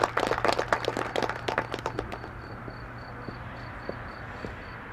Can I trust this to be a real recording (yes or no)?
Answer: yes